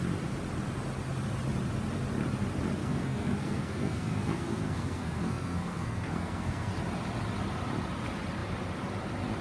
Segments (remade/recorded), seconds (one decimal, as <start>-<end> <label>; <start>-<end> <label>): 0.0-2.8 recorded; 2.8-6.7 remade; 6.7-9.4 recorded